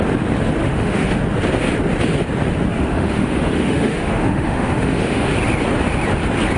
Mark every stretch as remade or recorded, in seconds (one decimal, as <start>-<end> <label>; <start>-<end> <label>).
0.0-0.6 recorded; 0.6-1.2 remade; 1.2-2.7 recorded; 2.7-5.3 remade; 5.3-6.6 recorded